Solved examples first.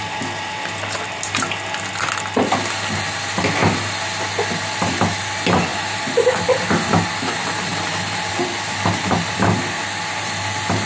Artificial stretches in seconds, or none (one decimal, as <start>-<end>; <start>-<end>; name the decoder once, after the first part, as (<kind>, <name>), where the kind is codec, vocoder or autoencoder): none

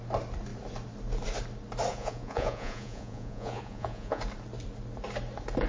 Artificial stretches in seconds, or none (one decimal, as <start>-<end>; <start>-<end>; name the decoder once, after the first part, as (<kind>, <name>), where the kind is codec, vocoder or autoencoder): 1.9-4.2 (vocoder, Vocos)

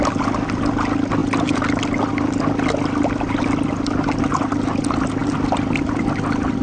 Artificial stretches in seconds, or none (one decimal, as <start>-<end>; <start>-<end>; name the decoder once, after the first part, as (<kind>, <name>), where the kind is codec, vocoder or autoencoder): 5.2-5.8 (vocoder, BigVGAN v2)